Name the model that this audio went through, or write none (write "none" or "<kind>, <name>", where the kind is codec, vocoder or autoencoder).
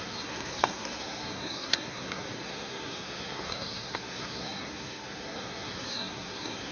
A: codec, SNAC